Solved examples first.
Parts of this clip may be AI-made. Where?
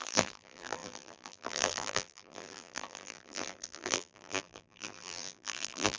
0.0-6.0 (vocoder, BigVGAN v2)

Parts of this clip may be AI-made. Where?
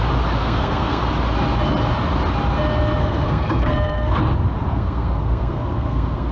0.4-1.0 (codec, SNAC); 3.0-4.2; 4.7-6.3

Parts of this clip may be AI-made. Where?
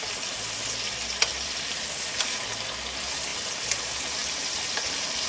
1.3-2.5 (vocoder, BigVGAN v2); 4.2-5.3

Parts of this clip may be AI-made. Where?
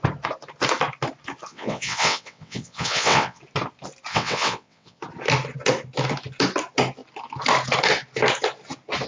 1.5-3.4 (vocoder, WaveNeXt); 4.1-5.0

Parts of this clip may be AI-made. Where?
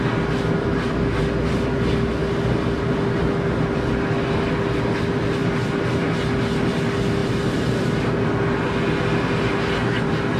7.2-8.0 (vocoder, BigVGAN v2)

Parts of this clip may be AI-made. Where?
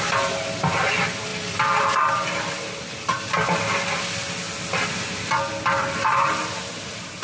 none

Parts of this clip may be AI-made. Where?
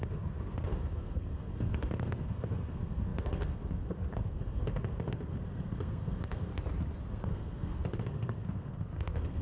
0.0-6.5 (codec, SNAC); 7.1-9.4